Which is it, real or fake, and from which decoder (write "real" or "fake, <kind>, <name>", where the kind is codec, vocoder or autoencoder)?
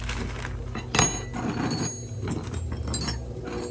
real